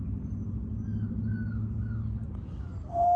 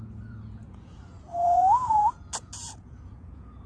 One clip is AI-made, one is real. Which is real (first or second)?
first